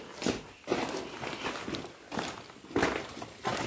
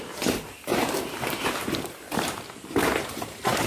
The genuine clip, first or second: first